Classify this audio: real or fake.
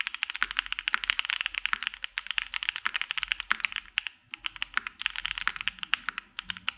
real